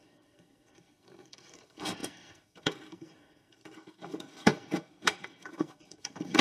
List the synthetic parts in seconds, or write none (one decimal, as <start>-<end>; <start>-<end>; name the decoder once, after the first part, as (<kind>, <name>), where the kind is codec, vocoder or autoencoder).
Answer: 0.0-6.4 (codec, SNAC)